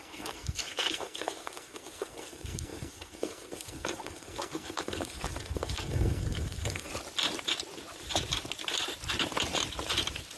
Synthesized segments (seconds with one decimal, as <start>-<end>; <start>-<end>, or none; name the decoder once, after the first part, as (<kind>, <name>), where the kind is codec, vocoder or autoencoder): 0.0-6.9 (codec, SNAC)